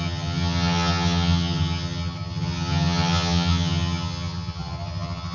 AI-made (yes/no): yes